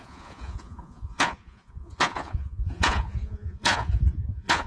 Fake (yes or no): yes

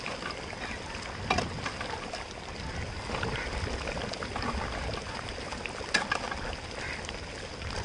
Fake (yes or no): no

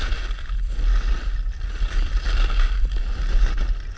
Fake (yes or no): no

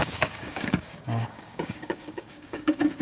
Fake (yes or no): yes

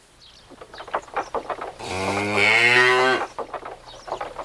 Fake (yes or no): no